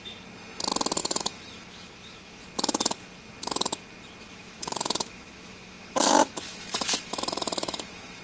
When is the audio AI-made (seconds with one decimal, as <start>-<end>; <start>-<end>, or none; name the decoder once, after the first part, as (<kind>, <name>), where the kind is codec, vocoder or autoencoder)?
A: 1.0-2.4 (autoencoder, DAC-VAE); 4.3-8.2